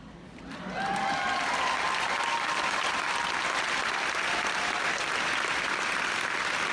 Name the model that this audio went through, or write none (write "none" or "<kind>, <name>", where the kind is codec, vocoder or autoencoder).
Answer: none